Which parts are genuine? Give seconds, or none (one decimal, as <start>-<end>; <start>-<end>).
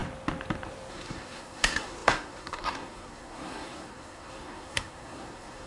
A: 0.0-0.9